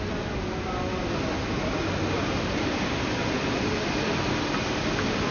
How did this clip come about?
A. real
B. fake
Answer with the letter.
A